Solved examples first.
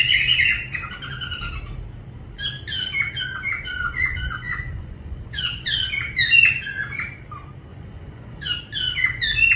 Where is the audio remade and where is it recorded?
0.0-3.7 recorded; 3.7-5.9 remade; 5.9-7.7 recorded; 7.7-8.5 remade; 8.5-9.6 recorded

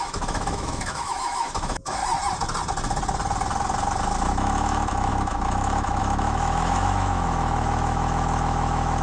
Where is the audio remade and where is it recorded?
0.0-2.0 remade; 2.0-4.3 recorded; 4.3-9.0 remade

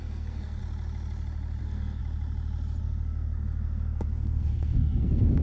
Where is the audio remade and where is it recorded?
0.0-0.6 remade; 0.6-1.6 recorded; 1.6-2.0 remade; 2.0-2.8 recorded; 2.8-5.4 remade

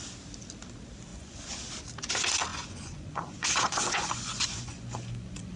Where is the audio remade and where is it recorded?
0.0-1.1 recorded; 1.1-1.6 remade; 1.6-2.5 recorded; 2.5-5.6 remade

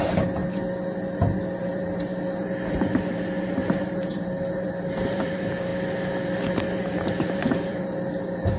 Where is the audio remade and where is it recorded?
0.0-0.4 remade; 0.4-1.6 recorded; 1.6-2.1 remade; 2.1-2.7 recorded; 2.7-5.7 remade; 5.7-6.5 recorded; 6.5-8.6 remade

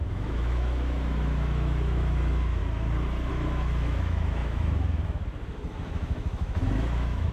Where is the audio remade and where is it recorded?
0.0-2.6 remade; 2.6-3.3 recorded; 3.3-7.3 remade

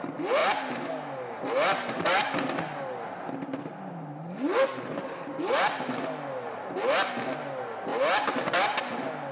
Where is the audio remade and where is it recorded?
0.0-9.3 recorded